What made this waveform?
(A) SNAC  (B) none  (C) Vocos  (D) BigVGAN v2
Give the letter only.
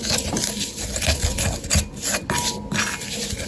B